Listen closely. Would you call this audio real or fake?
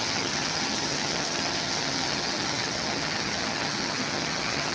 fake